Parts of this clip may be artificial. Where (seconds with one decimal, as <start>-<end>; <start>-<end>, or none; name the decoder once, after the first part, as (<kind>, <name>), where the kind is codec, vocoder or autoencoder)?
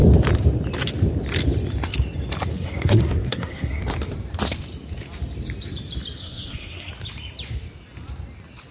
2.5-3.8 (codec, SNAC); 6.2-6.9